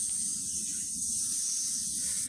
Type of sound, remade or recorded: recorded